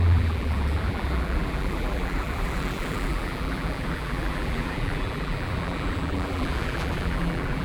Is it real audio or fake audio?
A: fake